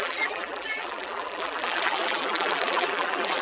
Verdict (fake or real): fake